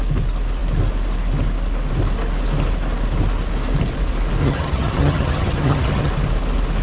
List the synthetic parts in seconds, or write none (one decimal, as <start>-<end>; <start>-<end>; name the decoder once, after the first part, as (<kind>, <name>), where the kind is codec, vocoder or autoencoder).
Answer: 4.4-6.1 (vocoder, HiFi-GAN)